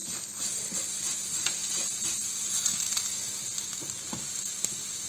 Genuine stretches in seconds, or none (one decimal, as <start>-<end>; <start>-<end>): 0.0-1.6